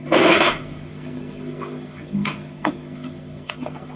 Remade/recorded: remade